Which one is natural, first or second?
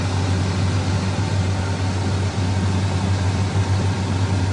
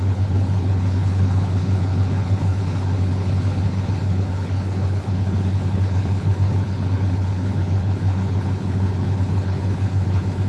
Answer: first